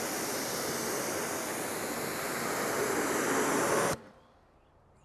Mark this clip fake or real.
real